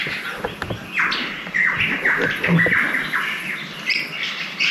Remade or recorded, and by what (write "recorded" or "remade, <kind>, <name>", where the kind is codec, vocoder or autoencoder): recorded